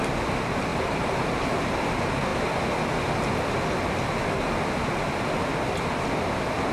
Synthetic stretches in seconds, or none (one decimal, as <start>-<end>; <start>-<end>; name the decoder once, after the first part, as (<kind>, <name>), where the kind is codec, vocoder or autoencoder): 0.7-1.5 (vocoder, BigVGAN v2)